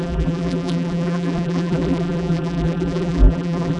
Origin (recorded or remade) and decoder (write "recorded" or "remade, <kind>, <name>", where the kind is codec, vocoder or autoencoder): remade, vocoder, BigVGAN v2